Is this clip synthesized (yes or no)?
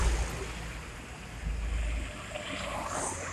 no